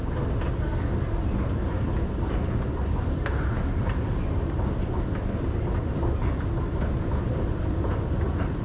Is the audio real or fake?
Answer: real